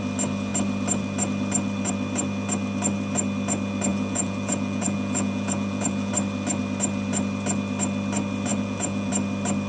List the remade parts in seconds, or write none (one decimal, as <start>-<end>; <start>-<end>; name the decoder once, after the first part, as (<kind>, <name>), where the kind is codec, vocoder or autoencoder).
3.9-6.1 (vocoder, Vocos); 8.5-9.1